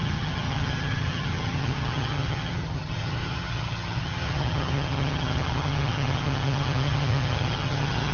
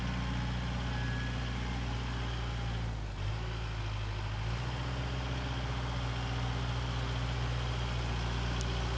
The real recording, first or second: second